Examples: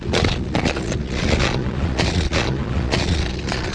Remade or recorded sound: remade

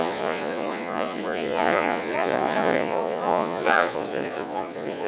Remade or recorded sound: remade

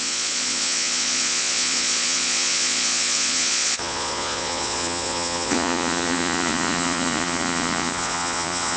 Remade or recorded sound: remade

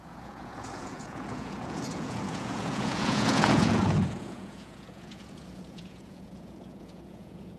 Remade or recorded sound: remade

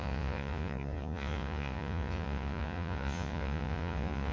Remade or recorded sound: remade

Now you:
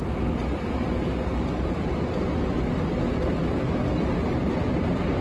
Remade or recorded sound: recorded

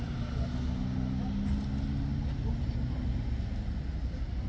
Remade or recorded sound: recorded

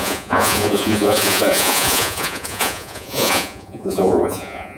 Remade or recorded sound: remade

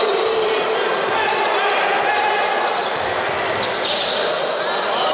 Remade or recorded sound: recorded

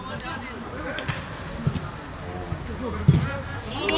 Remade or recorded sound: recorded